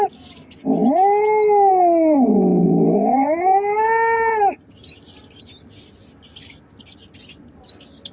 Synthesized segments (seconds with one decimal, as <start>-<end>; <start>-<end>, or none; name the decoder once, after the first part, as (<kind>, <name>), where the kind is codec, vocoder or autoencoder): none